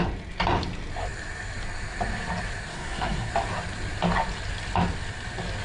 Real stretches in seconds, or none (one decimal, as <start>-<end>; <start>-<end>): 0.0-2.7; 3.3-5.6